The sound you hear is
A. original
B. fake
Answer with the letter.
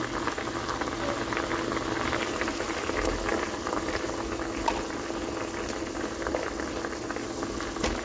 A